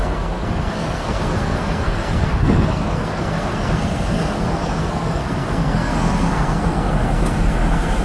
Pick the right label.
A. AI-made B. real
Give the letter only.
A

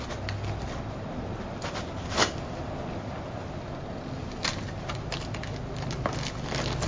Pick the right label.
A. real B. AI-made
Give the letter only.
A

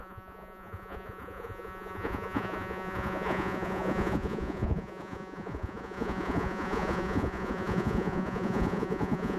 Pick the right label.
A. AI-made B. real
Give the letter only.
A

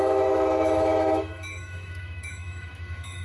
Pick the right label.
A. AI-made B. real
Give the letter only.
A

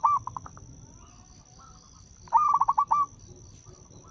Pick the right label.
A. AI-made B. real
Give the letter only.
B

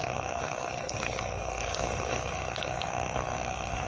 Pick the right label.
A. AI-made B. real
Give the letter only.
A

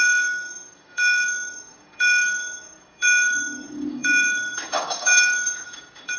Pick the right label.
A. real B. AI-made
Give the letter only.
B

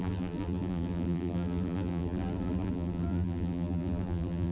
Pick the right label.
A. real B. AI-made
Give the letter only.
B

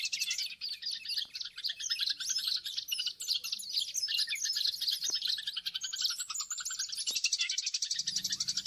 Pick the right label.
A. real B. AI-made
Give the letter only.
A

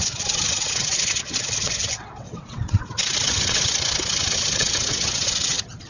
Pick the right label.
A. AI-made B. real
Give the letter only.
A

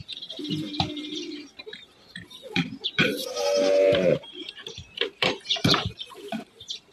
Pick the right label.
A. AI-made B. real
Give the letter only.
A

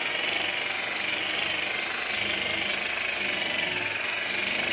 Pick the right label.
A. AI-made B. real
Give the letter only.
B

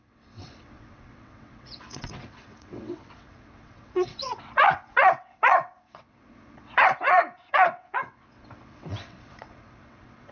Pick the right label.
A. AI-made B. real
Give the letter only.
A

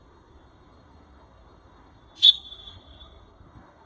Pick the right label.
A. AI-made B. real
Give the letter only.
A